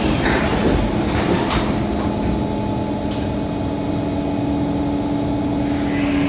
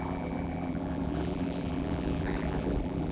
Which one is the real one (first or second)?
first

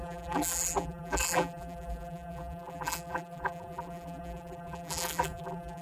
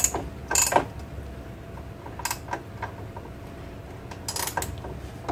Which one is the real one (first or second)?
second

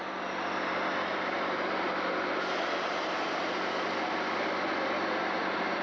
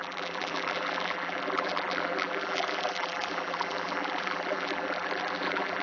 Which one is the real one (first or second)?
first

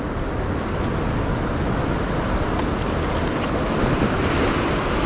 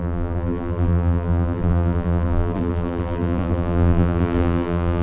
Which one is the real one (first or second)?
first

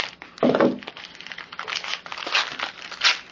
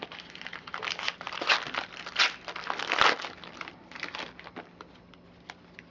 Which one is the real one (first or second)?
first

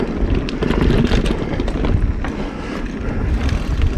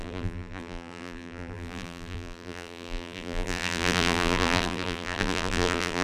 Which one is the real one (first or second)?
first